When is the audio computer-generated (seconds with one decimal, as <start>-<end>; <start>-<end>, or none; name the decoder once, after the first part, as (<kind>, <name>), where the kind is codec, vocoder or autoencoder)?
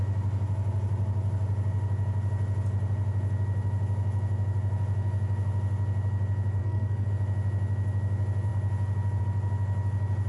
6.6-7.1 (codec, SNAC)